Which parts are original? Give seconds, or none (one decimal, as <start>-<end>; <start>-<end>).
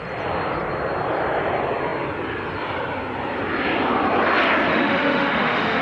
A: 0.0-4.7